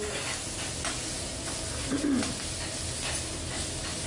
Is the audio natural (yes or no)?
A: yes